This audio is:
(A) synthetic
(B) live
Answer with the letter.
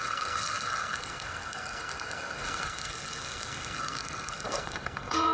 A